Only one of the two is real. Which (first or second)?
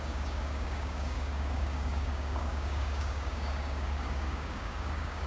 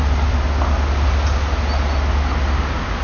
second